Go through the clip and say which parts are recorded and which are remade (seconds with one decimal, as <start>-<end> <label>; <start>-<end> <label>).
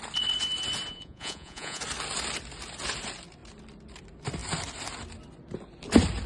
0.0-0.9 recorded; 0.9-1.8 remade; 1.8-6.3 recorded